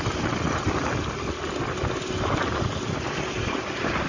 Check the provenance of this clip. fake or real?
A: real